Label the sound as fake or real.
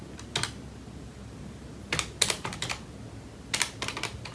real